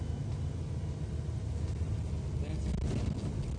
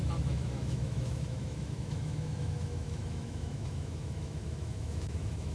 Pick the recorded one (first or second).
first